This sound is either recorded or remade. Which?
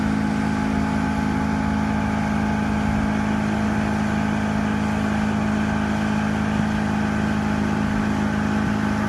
recorded